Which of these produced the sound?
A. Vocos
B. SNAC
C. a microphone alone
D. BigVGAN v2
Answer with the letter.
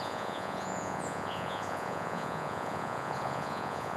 A